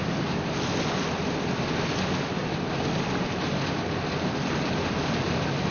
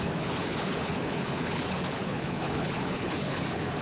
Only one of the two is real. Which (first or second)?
first